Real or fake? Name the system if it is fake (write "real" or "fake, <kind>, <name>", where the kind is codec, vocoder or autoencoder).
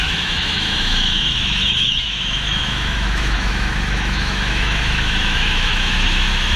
fake, autoencoder, DAC-VAE